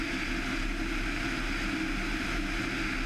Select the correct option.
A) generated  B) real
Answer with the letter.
B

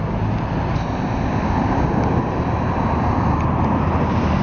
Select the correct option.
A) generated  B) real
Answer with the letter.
B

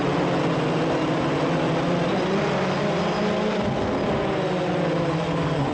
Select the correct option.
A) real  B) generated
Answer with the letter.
A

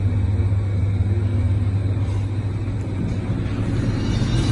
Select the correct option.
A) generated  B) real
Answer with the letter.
B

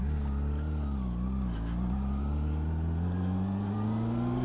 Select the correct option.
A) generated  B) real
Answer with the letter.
B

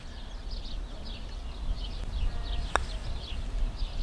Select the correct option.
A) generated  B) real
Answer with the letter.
B